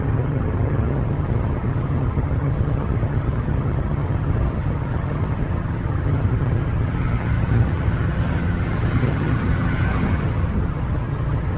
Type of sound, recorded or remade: remade